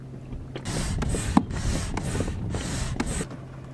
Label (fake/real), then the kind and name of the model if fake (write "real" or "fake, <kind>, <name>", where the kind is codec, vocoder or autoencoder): real